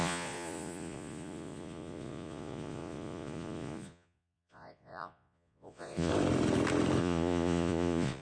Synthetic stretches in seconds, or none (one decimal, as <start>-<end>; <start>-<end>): 0.0-6.1; 7.0-8.2